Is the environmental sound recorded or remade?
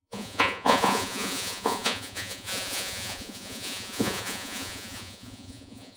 remade